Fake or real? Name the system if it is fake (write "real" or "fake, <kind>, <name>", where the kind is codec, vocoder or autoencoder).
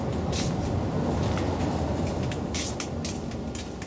real